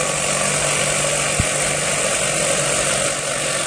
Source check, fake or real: real